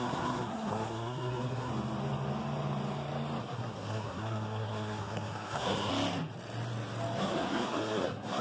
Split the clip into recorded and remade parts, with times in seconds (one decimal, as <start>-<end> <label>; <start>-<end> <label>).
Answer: 0.0-1.7 remade; 1.7-3.4 recorded; 3.4-5.9 remade; 5.9-7.2 recorded; 7.2-8.4 remade